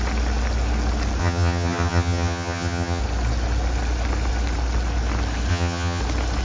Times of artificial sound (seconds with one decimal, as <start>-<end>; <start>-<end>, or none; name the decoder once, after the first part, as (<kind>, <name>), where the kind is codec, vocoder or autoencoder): 1.2-3.0 (vocoder, HiFi-GAN); 5.5-6.0